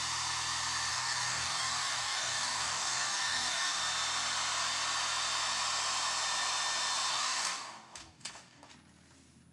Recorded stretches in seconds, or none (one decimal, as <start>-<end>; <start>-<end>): 0.0-0.9; 3.8-7.1; 8.7-9.5